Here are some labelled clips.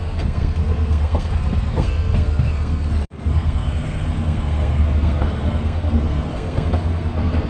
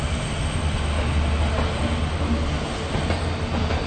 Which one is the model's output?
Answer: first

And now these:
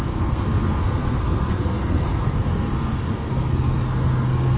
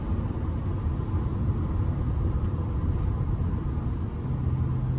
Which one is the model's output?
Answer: first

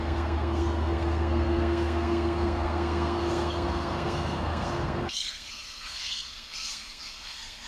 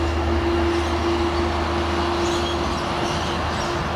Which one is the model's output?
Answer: first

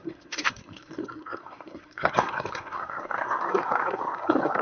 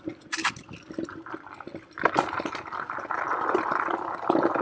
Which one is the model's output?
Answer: first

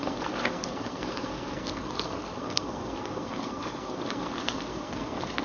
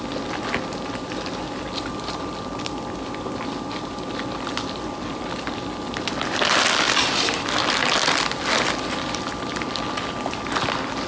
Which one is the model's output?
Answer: first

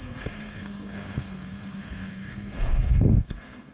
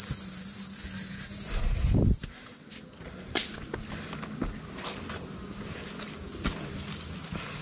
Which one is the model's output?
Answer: first